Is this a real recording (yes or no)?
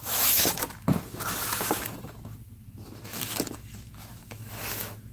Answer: no